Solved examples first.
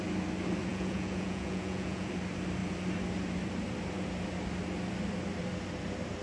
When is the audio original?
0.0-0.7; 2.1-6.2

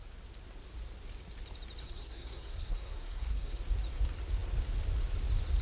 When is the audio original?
0.0-1.8; 3.6-5.6

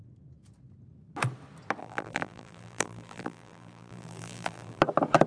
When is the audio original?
0.0-1.8; 4.8-5.3

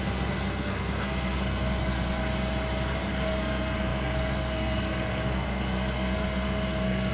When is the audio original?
2.2-3.1